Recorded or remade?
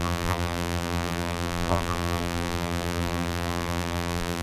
remade